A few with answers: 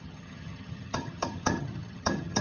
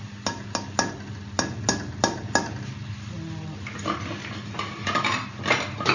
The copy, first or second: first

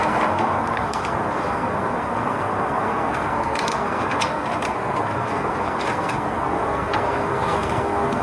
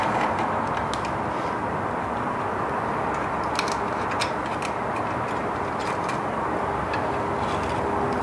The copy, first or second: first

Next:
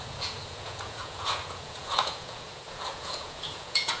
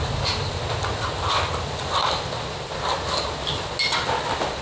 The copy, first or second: first